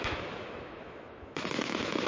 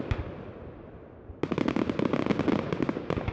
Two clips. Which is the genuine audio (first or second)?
second